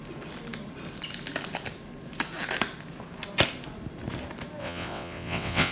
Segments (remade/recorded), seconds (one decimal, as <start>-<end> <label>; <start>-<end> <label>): 0.0-4.6 recorded; 4.6-5.7 remade

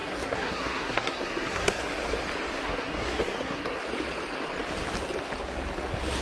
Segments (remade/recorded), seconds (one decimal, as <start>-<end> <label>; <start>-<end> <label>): 0.0-1.8 remade; 1.8-2.5 recorded; 2.5-3.8 remade; 3.8-6.2 recorded